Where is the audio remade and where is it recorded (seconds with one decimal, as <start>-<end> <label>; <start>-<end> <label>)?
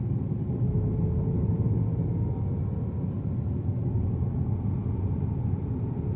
0.0-6.2 recorded